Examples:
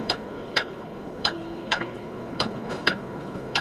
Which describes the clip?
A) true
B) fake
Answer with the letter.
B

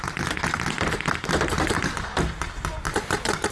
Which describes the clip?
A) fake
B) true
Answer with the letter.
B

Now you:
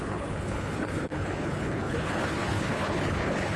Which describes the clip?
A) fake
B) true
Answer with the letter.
A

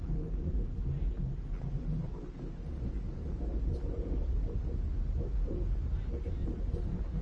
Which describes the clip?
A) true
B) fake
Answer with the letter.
A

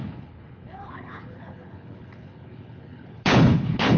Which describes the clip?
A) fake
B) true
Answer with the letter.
A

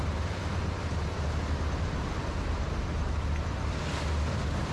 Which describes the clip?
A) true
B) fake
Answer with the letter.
A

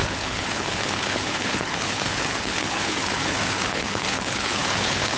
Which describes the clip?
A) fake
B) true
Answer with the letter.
A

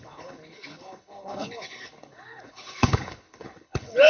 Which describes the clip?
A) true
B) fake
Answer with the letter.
B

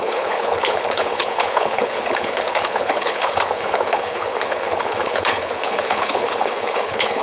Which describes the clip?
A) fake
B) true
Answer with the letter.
A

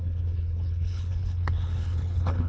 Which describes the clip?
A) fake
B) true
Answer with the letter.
A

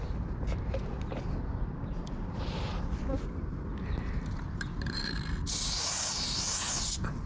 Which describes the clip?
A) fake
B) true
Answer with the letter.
B